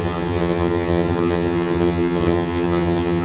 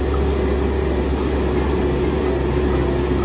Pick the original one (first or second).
second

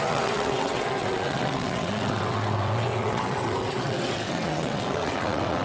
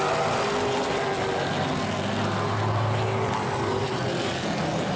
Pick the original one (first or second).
second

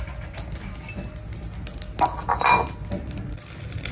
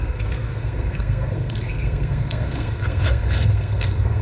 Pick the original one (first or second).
first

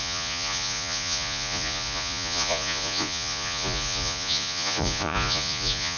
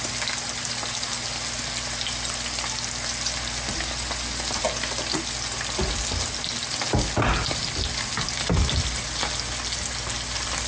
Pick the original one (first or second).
second